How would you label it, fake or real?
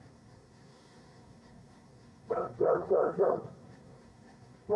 fake